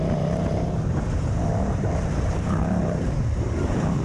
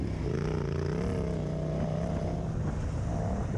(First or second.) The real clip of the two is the second